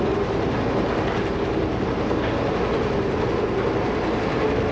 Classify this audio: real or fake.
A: real